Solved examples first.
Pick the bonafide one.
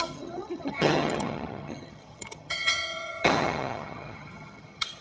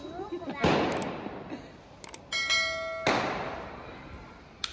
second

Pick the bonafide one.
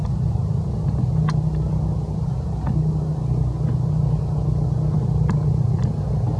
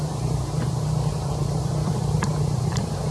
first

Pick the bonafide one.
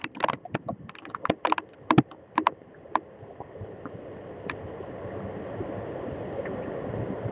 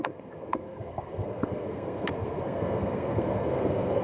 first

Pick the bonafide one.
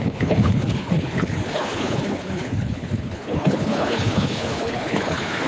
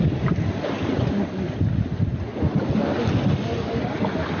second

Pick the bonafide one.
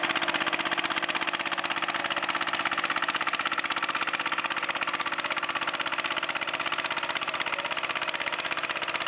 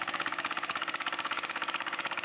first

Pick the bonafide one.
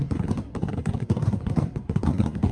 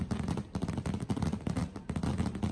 second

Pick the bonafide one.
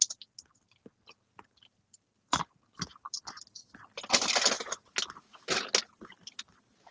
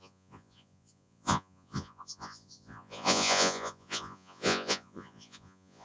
first